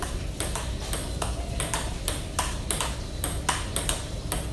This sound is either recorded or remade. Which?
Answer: recorded